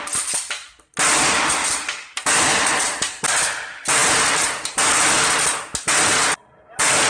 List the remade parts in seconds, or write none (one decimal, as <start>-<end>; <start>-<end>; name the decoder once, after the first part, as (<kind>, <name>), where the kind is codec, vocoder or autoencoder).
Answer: none

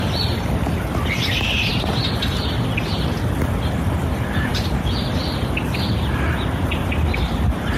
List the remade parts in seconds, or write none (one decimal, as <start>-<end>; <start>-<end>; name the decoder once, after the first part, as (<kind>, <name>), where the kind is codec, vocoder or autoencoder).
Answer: none